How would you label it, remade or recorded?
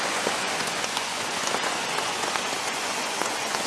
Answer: remade